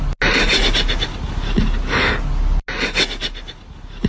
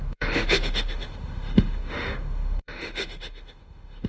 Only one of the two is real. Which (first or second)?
first